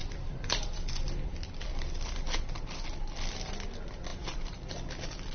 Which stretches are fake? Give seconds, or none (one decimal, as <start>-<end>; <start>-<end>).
0.0-2.6; 4.1-4.7